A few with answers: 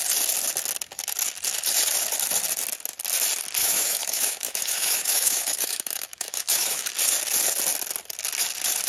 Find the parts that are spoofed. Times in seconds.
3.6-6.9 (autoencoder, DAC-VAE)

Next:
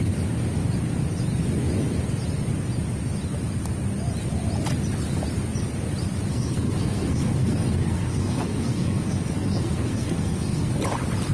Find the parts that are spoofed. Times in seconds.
6.3-10.7 (codec, SNAC)

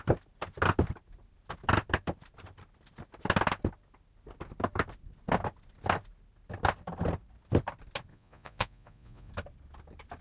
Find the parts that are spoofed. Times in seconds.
8.1-9.3 (vocoder, Vocos)